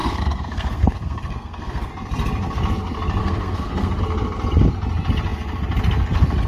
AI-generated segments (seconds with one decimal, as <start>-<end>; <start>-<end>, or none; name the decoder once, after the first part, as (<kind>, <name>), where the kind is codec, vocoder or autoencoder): 0.0-1.9 (codec, SNAC); 3.2-4.0